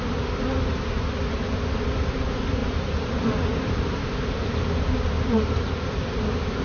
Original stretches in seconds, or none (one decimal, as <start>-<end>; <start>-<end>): 0.0-2.6; 3.8-4.4; 5.9-6.6